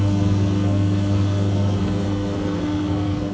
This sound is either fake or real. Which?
fake